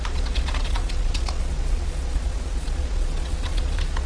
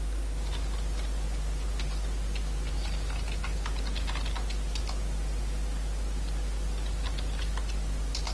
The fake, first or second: first